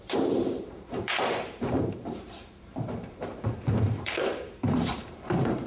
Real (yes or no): no